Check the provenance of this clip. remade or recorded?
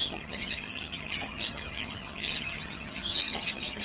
remade